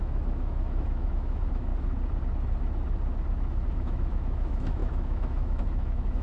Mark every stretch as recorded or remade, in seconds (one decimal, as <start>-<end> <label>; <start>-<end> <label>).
0.0-1.7 remade; 1.7-3.7 recorded; 3.7-6.2 remade